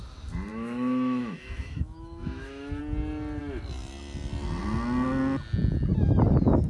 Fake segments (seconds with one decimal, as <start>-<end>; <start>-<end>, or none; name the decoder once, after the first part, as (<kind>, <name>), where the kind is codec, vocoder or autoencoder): 0.5-2.8 (autoencoder, DAC-VAE)